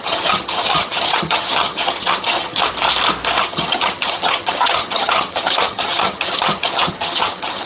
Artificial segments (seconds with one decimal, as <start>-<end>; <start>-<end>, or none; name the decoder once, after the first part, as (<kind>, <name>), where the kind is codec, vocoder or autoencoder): 0.0-2.6 (vocoder, HiFi-GAN); 3.4-7.7